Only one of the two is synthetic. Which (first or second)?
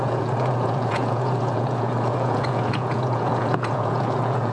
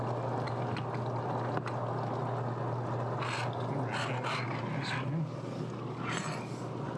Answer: first